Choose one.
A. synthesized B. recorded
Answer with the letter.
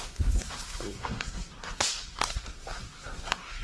A